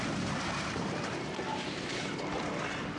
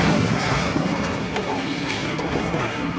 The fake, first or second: second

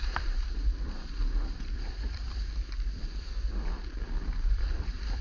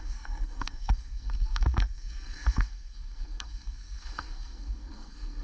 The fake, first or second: second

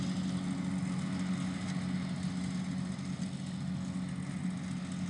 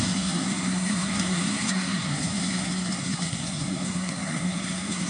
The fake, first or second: second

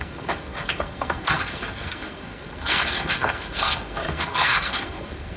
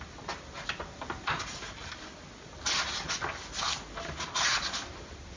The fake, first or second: first